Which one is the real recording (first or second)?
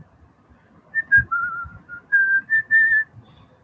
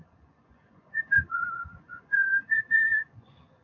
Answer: first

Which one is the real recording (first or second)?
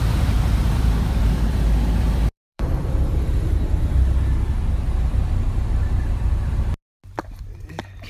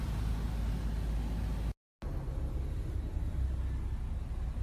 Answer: second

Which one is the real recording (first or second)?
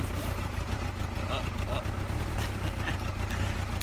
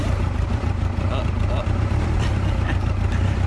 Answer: first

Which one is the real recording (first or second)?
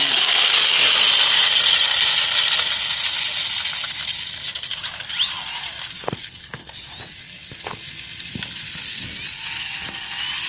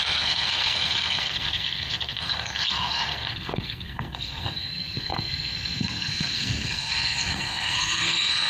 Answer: first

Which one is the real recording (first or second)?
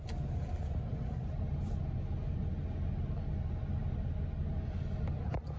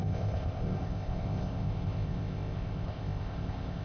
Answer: first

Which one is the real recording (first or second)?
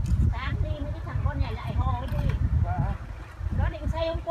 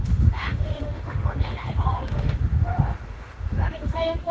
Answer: first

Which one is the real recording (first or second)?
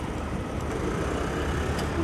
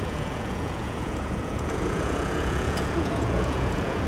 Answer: first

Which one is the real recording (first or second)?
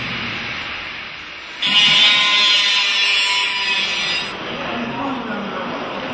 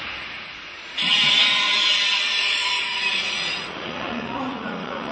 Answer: first